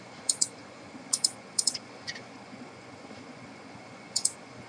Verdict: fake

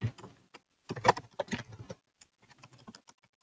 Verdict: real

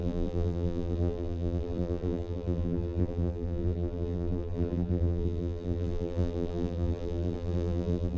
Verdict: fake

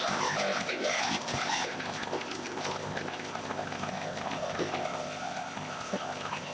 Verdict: fake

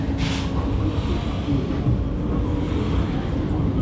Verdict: real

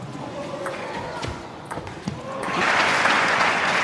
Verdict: fake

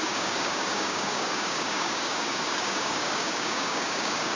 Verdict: fake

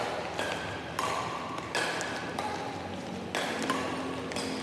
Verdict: real